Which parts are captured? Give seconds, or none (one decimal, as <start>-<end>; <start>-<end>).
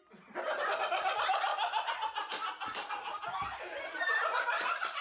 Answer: 0.0-5.0